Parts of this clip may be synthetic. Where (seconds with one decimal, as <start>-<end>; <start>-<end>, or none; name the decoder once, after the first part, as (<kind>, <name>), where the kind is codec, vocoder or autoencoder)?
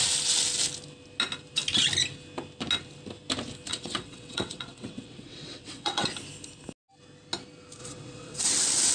3.7-6.1 (vocoder, WaveNeXt); 7.8-8.4